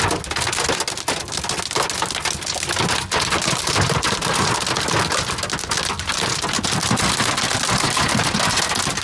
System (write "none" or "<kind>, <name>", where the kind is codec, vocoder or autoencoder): none